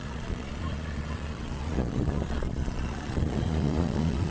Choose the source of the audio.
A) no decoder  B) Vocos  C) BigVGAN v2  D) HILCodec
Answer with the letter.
B